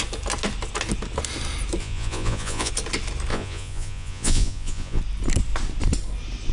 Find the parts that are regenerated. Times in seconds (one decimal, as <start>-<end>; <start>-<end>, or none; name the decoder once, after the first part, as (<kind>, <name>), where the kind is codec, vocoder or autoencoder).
1.8-2.7 (vocoder, Vocos); 3.3-5.0